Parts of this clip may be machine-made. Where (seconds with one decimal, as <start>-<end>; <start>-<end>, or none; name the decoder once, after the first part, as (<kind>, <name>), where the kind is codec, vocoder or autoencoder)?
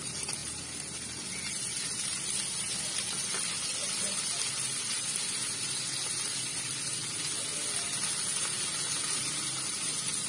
none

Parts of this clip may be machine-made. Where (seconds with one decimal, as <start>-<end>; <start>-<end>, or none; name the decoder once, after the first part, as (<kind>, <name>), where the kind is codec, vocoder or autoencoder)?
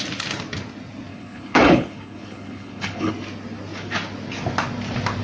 1.1-3.1 (codec, HILCodec)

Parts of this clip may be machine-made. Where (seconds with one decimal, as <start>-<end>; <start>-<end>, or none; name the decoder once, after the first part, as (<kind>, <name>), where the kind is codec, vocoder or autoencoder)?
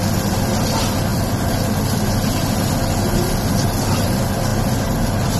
none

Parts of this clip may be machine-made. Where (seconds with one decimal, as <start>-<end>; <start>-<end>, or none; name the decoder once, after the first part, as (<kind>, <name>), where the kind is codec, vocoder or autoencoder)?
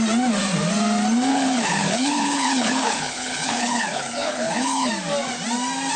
1.3-4.9 (codec, HILCodec)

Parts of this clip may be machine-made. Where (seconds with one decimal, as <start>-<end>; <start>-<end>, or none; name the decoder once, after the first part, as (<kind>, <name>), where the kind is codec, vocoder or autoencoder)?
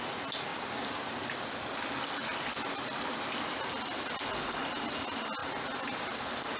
none